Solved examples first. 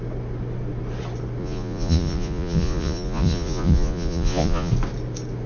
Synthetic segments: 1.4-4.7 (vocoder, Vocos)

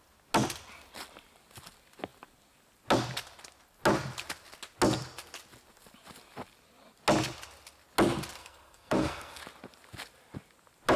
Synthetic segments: 8.4-9.4 (codec, SNAC)

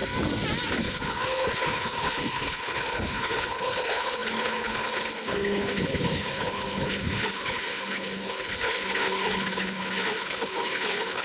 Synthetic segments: 0.7-11.2 (codec, HILCodec)

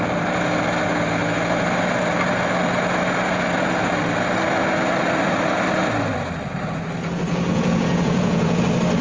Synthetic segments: 7.5-8.6 (vocoder, Vocos)

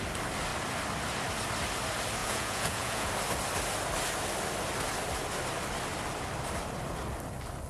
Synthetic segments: 2.2-3.1 (vocoder, Vocos)

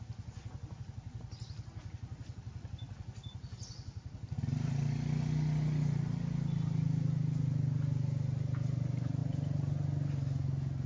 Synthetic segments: none

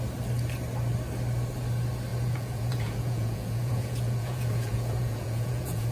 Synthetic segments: 2.1-5.9 (vocoder, Vocos)